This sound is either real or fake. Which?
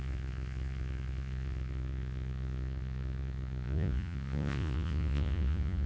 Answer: fake